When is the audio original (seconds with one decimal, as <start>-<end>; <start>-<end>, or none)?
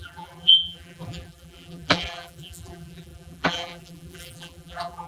none